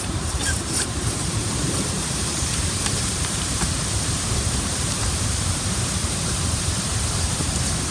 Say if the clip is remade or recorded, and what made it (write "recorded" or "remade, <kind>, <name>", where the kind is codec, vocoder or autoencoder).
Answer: remade, vocoder, BigVGAN v2